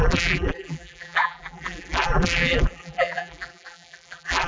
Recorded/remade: remade